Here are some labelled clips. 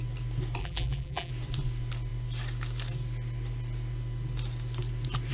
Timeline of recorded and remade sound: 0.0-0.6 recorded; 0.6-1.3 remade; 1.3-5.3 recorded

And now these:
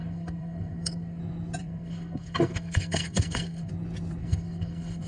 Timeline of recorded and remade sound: 0.0-1.2 remade; 1.2-1.6 recorded; 1.6-3.7 remade; 3.7-4.2 recorded; 4.2-5.1 remade

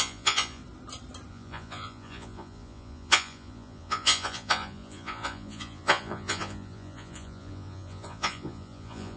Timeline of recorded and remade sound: 0.0-0.6 remade; 0.6-1.3 recorded; 1.3-9.2 remade

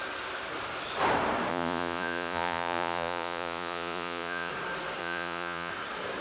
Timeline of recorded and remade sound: 0.0-1.5 recorded; 1.5-4.5 remade; 4.5-5.0 recorded; 5.0-5.7 remade; 5.7-6.2 recorded

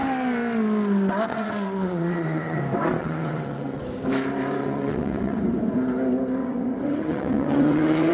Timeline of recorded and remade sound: 0.0-1.3 recorded; 1.3-2.6 remade; 2.6-3.0 recorded; 3.0-3.8 remade; 3.8-4.6 recorded; 4.6-5.4 remade; 5.4-6.4 recorded; 6.4-8.1 remade

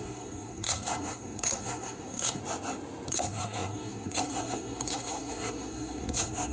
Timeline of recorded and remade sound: 0.0-2.4 remade; 2.4-3.1 recorded; 3.1-6.5 remade

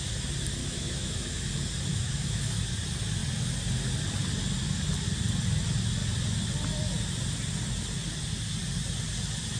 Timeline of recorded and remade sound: 0.0-0.6 recorded; 0.6-1.5 remade; 1.5-1.9 recorded; 1.9-2.6 remade; 2.6-9.6 recorded

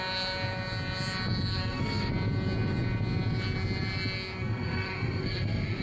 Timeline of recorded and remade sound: 0.0-1.5 recorded; 1.5-2.1 remade; 2.1-4.4 recorded; 4.4-5.8 remade